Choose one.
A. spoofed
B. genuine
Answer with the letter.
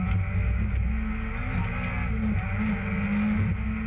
B